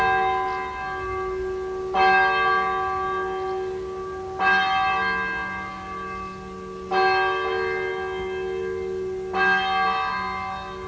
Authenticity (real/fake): real